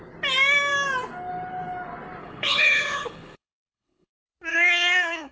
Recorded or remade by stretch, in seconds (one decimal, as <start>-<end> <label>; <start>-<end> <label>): 0.0-2.2 recorded; 2.2-4.1 remade; 4.1-4.5 recorded; 4.5-5.3 remade